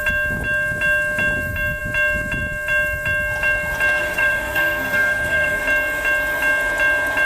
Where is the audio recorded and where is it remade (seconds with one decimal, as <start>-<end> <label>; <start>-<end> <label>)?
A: 0.0-4.0 recorded; 4.0-5.6 remade; 5.6-7.3 recorded